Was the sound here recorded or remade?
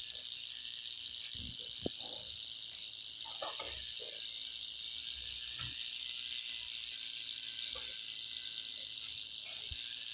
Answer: recorded